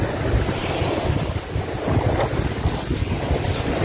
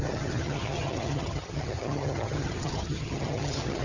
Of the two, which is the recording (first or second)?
first